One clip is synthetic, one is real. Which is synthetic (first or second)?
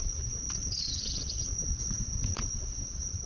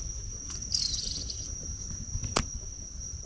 first